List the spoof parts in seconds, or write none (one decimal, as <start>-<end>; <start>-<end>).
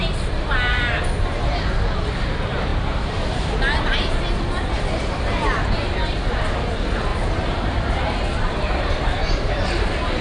2.7-3.5; 7.1-9.5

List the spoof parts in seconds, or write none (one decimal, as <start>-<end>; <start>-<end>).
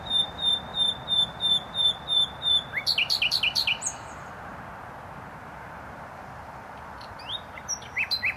none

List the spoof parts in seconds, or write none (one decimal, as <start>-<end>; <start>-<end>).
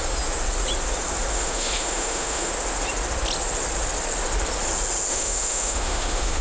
1.3-2.5; 5.1-6.4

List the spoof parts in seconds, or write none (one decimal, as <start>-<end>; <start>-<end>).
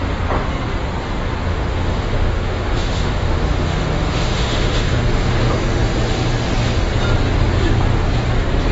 1.5-5.5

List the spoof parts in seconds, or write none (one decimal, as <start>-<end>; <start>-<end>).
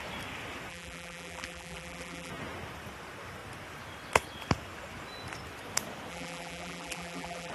0.7-2.3; 6.1-7.5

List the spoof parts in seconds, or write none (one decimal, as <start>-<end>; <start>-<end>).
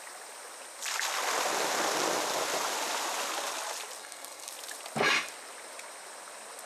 4.0-4.5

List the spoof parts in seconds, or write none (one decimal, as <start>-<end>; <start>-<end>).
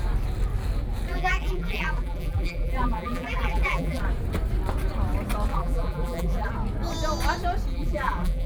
1.1-4.0; 5.5-6.5; 7.7-8.5